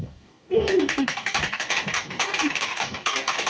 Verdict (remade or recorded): remade